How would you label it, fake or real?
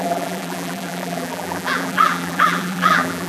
fake